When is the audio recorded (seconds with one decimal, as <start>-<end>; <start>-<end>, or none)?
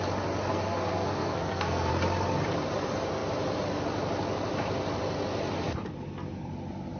0.0-0.5; 1.9-7.0